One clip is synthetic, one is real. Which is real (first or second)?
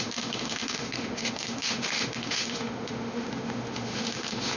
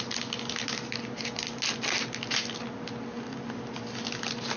second